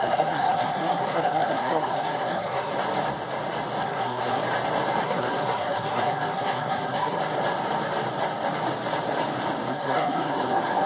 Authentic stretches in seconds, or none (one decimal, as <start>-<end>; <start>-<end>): 2.7-3.8; 4.4-5.0; 7.2-9.7